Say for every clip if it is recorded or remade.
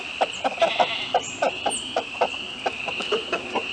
recorded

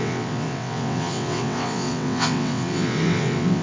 remade